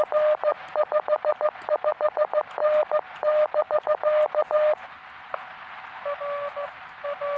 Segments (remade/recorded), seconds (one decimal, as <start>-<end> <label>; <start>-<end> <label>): 0.0-7.4 recorded